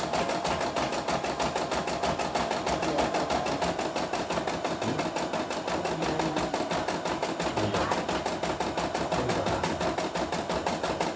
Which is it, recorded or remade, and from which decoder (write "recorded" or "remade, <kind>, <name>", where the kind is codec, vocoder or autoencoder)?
recorded